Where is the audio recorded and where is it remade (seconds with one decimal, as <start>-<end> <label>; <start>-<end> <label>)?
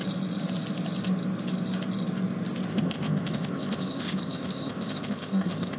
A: 0.0-2.7 recorded; 2.7-5.8 remade